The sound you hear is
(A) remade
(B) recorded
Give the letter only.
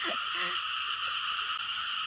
B